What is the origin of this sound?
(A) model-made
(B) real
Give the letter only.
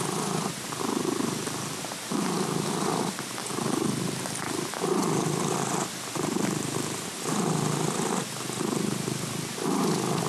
B